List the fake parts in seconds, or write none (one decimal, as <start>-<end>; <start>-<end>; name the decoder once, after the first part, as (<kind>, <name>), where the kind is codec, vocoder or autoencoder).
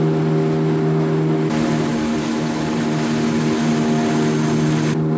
none